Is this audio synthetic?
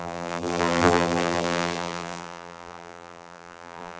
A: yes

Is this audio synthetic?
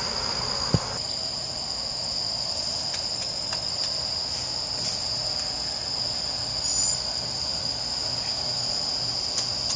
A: no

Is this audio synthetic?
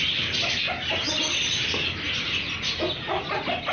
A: no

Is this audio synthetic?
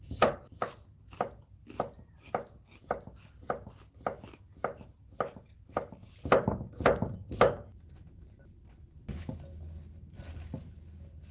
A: no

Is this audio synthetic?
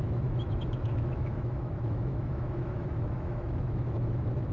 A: yes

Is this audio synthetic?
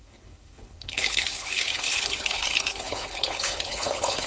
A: yes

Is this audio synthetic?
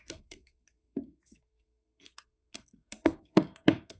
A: yes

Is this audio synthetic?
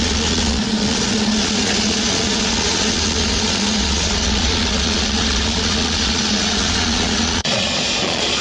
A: yes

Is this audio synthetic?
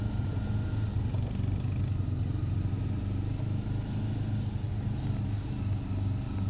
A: no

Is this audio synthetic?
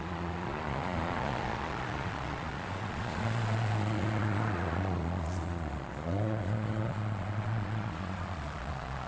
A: yes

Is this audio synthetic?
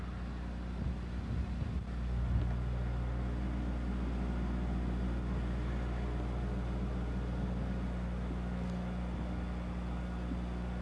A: no